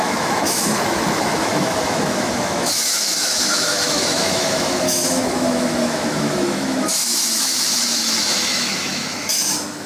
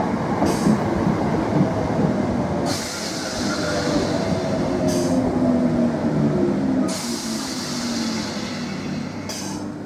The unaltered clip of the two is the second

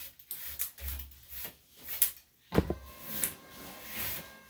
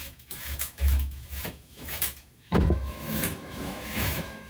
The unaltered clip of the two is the first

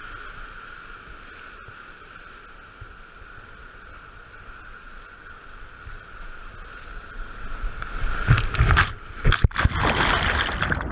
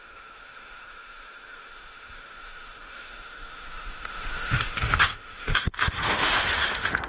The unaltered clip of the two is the first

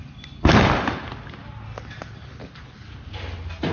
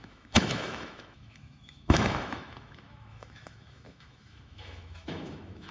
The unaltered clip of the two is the first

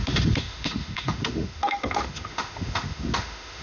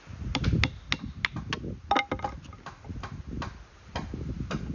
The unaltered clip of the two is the second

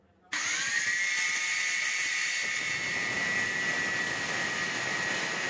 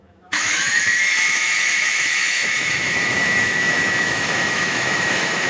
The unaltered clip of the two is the first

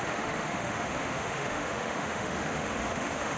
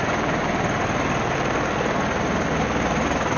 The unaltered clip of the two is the second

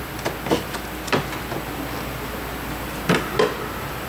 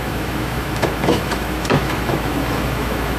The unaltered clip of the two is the first